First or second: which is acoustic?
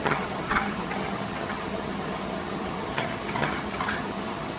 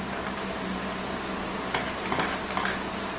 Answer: second